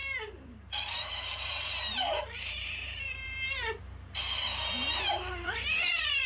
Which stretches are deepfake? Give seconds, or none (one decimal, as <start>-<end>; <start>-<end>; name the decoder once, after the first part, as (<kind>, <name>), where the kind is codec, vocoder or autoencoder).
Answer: 0.0-3.8 (vocoder, BigVGAN v2); 5.2-6.3